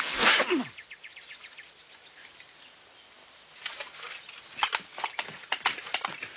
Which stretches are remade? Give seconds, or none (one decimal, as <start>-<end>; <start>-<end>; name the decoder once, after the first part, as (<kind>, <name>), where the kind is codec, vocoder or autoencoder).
none